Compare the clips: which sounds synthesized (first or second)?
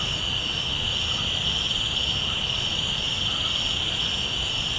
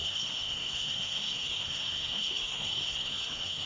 second